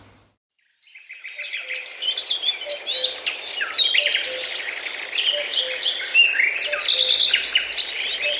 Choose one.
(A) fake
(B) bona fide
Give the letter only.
B